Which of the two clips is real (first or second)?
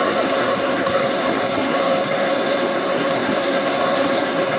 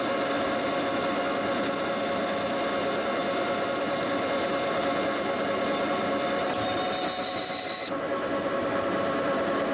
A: second